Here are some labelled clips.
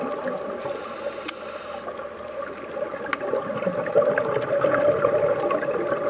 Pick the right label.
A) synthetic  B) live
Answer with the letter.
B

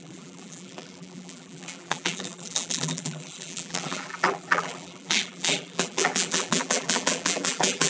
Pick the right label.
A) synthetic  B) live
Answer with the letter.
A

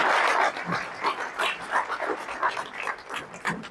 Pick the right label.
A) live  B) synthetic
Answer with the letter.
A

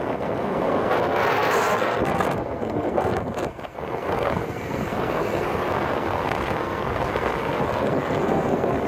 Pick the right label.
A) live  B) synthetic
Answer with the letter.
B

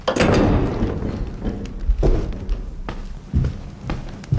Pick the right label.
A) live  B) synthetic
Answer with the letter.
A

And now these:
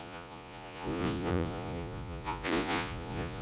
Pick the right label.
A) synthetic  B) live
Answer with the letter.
A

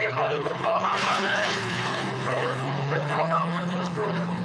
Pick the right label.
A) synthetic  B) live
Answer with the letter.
A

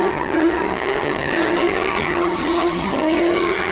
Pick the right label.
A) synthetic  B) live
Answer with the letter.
A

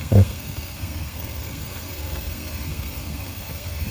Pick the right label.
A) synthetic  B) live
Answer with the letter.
A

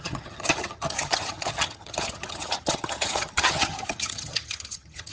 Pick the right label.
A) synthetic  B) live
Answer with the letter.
A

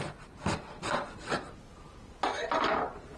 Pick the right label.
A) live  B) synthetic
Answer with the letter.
A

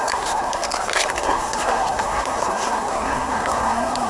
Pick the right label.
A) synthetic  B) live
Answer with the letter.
A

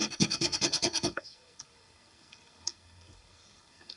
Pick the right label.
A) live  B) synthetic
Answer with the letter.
B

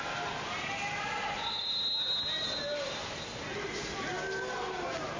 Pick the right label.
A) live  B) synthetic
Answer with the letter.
A